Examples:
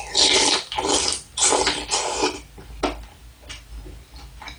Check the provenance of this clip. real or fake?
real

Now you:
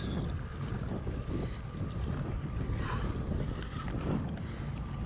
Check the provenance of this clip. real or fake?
real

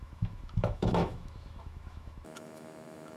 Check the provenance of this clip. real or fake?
fake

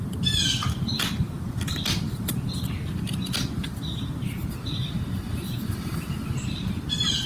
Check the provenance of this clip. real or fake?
real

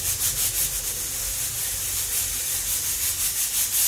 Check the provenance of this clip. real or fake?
real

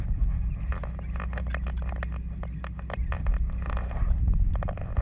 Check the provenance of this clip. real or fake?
real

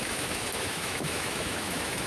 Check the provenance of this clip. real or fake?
fake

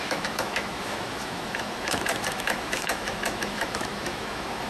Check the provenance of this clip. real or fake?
fake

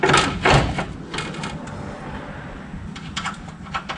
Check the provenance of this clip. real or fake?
real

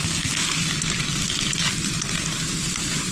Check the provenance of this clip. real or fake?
real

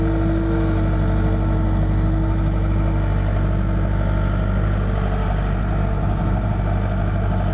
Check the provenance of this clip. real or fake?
real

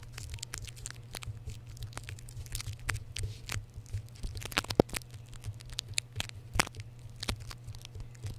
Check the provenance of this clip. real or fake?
real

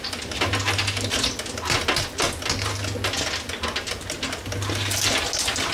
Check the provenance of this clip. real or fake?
real